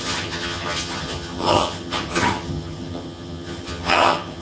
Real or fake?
fake